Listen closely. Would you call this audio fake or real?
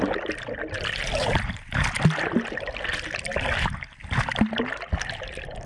real